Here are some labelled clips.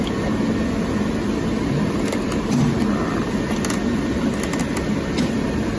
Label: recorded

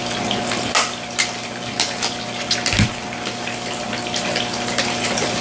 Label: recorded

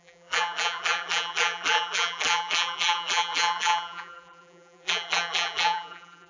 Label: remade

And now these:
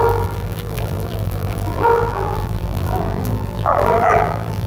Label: remade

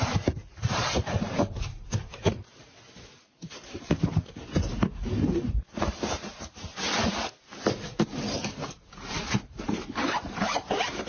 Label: remade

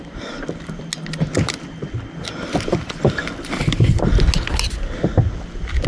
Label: recorded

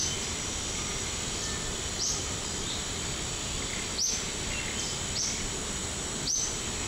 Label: recorded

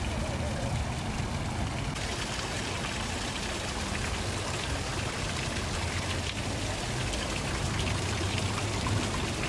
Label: recorded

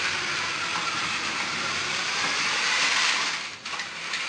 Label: remade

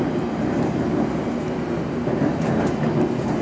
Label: recorded